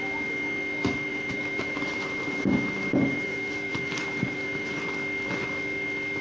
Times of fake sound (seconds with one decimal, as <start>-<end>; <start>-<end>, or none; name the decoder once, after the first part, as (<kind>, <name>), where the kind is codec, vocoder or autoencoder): 1.1-4.8 (vocoder, BigVGAN v2)